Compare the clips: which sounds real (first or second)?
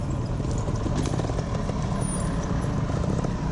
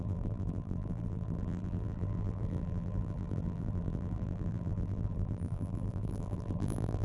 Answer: first